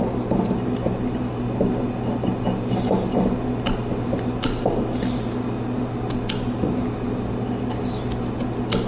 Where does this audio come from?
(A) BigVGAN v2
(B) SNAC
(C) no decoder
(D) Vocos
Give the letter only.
C